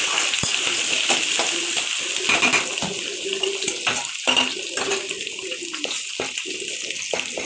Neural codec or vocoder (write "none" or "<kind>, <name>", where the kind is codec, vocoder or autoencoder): none